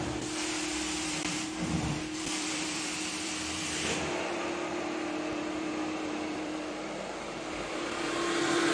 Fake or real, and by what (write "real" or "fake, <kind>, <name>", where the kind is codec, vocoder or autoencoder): fake, vocoder, BigVGAN v2